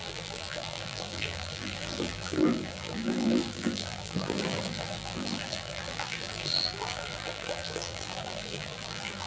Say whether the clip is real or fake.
fake